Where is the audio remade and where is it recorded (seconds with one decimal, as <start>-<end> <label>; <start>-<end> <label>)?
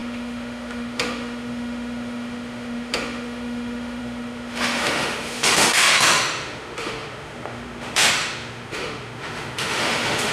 0.0-10.3 remade